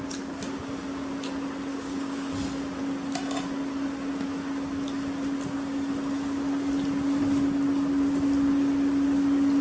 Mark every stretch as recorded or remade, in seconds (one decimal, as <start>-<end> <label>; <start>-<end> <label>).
0.0-1.7 recorded; 1.7-2.3 remade; 2.3-9.6 recorded